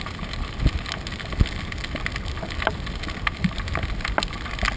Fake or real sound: real